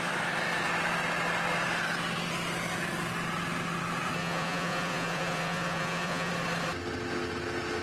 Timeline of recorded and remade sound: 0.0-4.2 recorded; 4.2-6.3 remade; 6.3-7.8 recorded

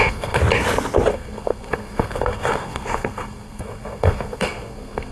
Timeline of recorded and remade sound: 0.0-0.4 remade; 0.4-1.1 recorded; 1.1-5.1 remade

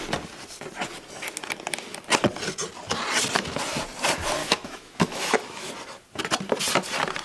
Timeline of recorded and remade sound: 0.0-4.4 recorded; 4.4-5.7 remade; 5.7-7.2 recorded

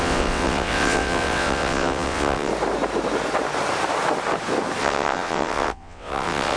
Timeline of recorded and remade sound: 0.0-2.5 remade; 2.5-4.8 recorded; 4.8-6.6 remade